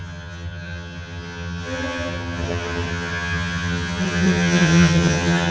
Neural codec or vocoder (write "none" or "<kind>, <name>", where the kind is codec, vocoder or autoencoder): vocoder, HiFi-GAN